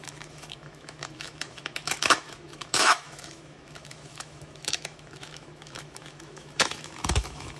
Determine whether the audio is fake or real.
fake